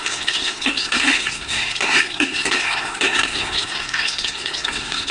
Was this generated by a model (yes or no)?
yes